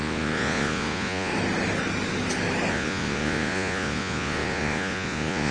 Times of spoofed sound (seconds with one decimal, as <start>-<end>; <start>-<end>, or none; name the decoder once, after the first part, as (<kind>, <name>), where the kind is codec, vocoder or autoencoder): 0.0-1.3 (vocoder, Vocos); 2.7-5.5